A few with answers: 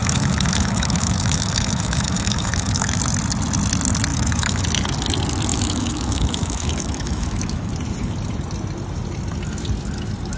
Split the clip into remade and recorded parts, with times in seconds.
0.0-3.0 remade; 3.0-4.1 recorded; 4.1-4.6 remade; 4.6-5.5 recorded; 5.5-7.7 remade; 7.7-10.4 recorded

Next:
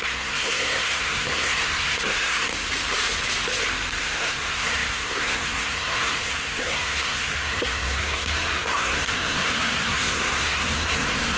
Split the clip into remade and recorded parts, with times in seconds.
0.0-2.5 remade; 2.5-4.0 recorded; 4.0-11.4 remade

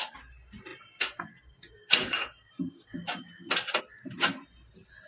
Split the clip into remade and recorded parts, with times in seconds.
0.0-5.1 recorded

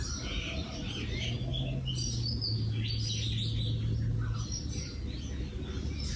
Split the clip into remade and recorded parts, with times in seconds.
0.0-6.2 recorded

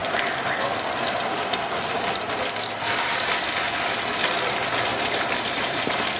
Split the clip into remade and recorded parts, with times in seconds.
0.0-4.9 recorded; 4.9-6.2 remade

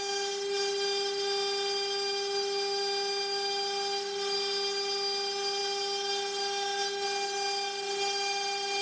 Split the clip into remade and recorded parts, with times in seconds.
0.0-8.8 recorded

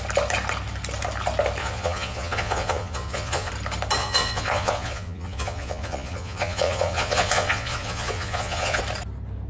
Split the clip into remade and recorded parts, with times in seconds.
0.0-1.6 recorded; 1.6-3.5 remade; 3.5-4.0 recorded; 4.0-8.8 remade; 8.8-9.5 recorded

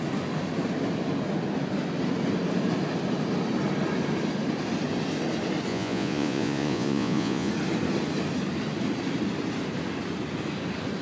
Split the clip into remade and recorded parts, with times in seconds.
0.0-5.7 recorded; 5.7-7.5 remade; 7.5-11.0 recorded